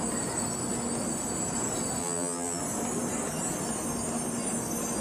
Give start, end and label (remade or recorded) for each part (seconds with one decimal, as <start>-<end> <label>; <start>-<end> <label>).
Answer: 0.0-2.0 recorded; 2.0-2.6 remade; 2.6-5.0 recorded